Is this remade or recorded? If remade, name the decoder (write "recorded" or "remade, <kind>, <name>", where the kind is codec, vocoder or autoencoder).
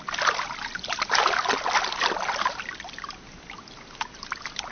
recorded